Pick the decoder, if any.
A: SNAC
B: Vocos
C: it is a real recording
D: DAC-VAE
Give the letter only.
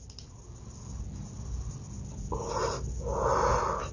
C